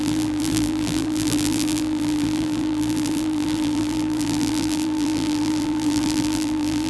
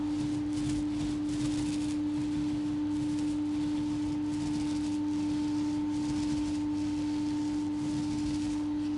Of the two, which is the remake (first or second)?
first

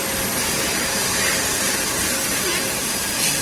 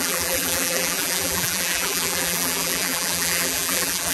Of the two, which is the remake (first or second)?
second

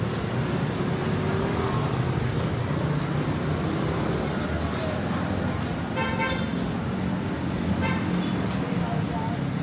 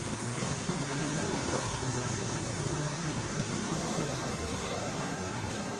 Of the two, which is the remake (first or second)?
second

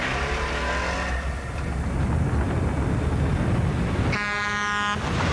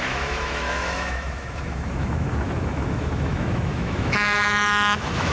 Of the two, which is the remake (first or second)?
second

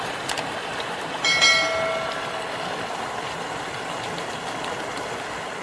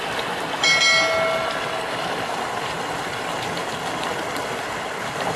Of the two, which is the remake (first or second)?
first